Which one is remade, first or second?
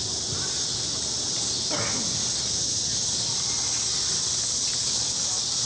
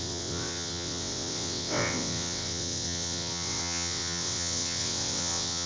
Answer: second